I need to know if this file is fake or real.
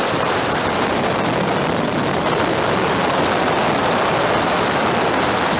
real